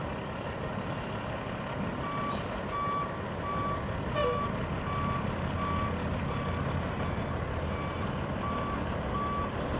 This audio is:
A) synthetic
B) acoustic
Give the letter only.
B